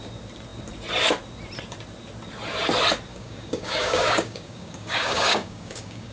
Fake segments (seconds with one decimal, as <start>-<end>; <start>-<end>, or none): 3.1-6.1

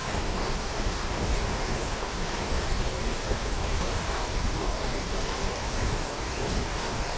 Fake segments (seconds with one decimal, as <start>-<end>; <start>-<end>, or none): 0.0-7.2

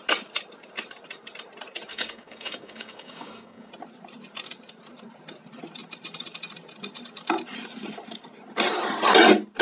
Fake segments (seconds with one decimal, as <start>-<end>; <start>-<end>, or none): 1.9-3.7

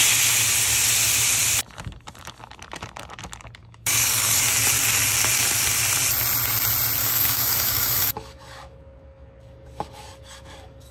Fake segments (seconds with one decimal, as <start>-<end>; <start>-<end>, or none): 3.6-4.4; 7.0-10.9